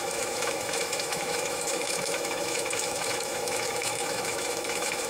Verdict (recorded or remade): remade